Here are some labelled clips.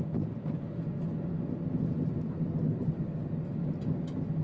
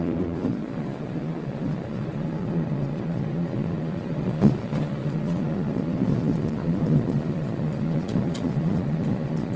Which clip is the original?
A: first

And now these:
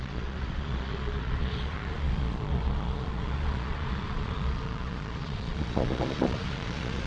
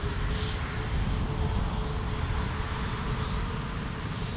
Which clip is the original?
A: second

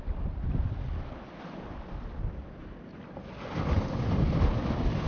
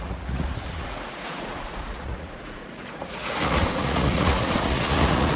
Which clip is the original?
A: first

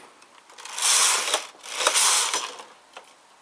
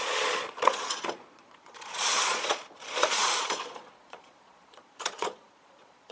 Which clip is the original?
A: first